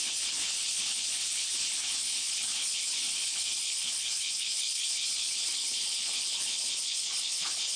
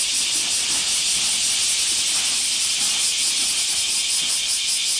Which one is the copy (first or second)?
first